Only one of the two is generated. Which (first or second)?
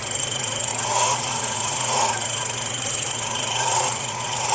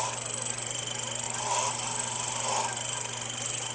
first